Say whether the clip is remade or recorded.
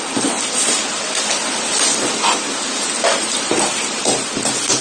recorded